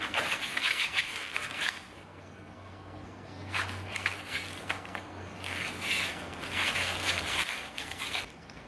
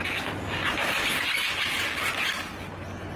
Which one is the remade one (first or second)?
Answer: first